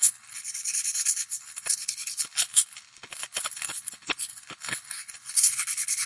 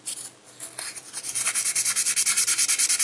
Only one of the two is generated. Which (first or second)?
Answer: first